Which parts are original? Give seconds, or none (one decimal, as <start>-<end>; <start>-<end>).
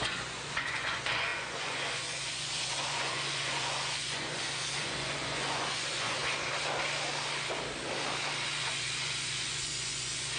6.2-8.6